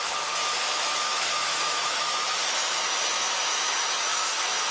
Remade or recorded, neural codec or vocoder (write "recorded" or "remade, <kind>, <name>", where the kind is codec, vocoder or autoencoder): remade, autoencoder, DAC-VAE